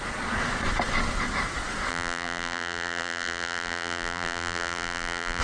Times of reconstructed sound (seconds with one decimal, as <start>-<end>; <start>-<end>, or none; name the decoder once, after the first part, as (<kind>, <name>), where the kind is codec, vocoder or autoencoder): 1.9-5.4 (vocoder, BigVGAN v2)